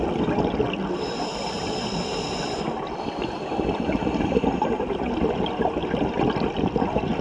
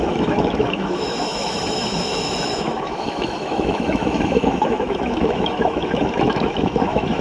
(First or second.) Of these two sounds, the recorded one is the first